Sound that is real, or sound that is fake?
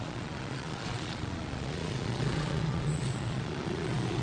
fake